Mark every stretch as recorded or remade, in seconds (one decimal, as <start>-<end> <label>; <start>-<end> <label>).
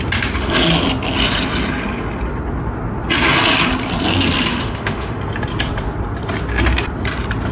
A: 0.0-4.5 recorded; 4.5-5.2 remade; 5.2-7.5 recorded